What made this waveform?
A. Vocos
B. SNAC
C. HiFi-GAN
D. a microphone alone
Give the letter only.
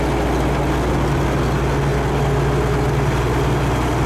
D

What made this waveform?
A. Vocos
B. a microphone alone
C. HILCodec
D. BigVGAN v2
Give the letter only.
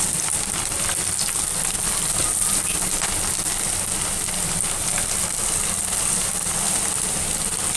B